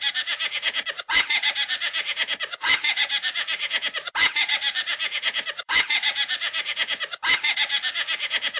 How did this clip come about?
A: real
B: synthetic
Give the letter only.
B